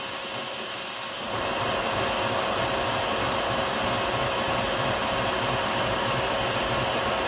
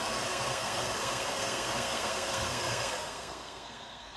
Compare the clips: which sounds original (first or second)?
first